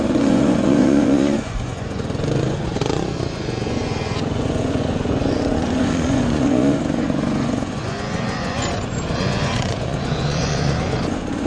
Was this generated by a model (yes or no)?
yes